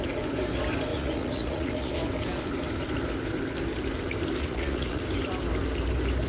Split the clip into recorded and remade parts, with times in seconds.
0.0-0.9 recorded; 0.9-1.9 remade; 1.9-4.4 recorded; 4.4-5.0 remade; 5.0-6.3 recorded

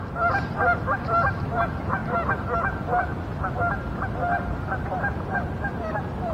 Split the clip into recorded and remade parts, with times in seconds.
0.0-6.3 recorded

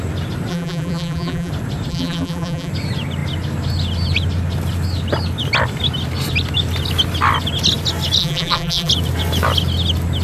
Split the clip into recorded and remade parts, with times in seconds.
0.0-0.5 recorded; 0.5-1.5 remade; 1.5-1.9 recorded; 1.9-2.7 remade; 2.7-8.2 recorded; 8.2-8.9 remade; 8.9-10.2 recorded

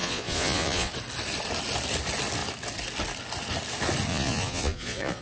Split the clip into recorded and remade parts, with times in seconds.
0.0-0.9 remade; 0.9-4.1 recorded; 4.1-5.2 remade

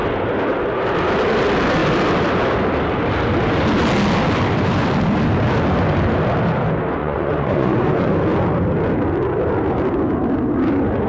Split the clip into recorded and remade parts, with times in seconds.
0.0-7.0 recorded; 7.0-8.1 remade; 8.1-11.1 recorded

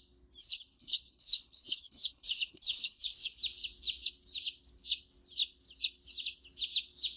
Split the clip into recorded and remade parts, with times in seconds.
0.0-0.4 recorded; 0.4-3.4 remade; 3.4-7.2 recorded

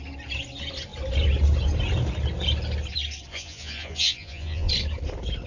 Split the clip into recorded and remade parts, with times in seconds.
0.0-3.3 recorded; 3.3-4.7 remade; 4.7-5.5 recorded